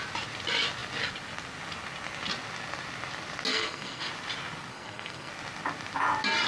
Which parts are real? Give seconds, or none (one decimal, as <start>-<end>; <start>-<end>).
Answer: 0.0-3.5; 4.1-4.7; 5.3-6.5